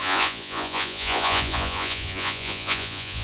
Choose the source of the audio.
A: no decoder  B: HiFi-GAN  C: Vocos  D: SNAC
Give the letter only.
C